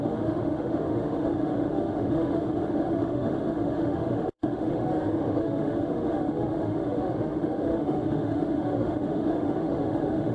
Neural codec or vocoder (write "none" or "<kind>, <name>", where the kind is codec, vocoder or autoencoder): autoencoder, DAC-VAE